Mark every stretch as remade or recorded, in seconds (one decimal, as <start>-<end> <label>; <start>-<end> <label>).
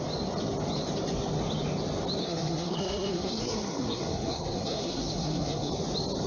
0.0-2.2 recorded; 2.2-5.7 remade; 5.7-6.3 recorded